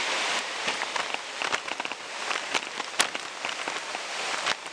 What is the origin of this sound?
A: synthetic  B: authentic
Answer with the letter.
B